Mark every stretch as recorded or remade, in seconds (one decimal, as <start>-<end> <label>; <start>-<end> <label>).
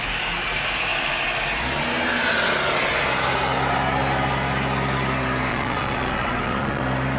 0.0-5.5 recorded; 5.5-6.8 remade; 6.8-7.2 recorded